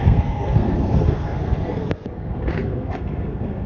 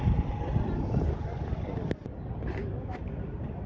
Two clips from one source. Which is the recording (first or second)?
second